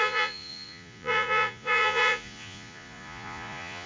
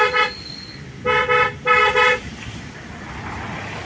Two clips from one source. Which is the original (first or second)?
second